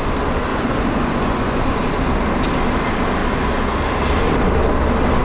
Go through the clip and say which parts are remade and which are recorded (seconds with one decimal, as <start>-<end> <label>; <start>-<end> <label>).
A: 0.0-0.5 recorded; 0.5-1.6 remade; 1.6-5.2 recorded